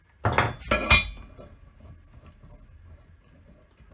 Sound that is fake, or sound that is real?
real